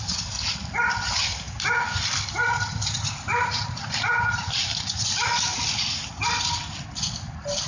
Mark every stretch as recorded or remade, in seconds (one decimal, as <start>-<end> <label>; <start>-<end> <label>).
0.0-3.3 recorded; 3.3-3.9 remade; 3.9-7.7 recorded